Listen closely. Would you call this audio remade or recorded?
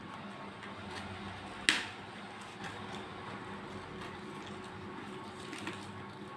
recorded